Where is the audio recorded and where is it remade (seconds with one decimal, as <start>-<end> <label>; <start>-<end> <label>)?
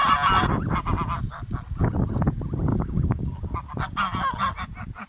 0.0-2.7 recorded; 2.7-3.4 remade; 3.4-5.1 recorded